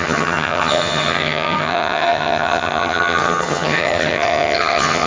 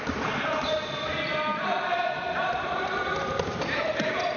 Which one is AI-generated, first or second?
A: first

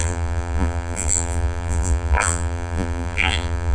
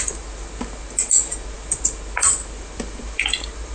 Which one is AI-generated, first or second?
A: first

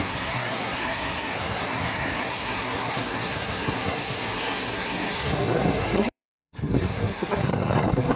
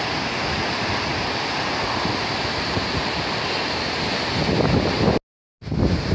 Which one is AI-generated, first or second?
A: first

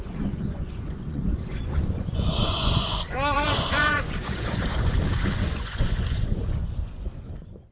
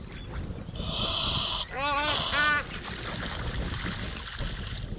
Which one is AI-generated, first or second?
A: first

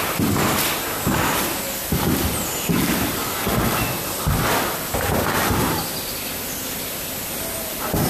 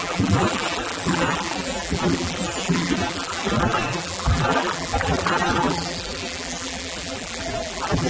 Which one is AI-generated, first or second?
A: second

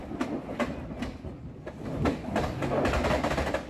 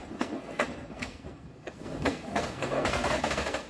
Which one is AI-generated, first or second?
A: second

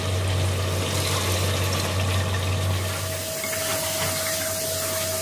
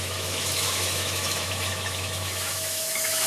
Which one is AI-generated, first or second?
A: second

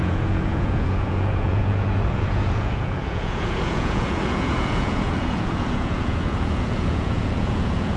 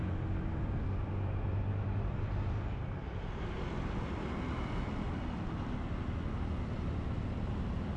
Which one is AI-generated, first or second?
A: first